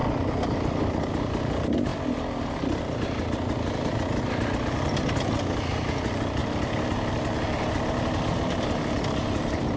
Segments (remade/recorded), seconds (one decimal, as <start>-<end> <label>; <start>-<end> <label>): 0.0-9.8 recorded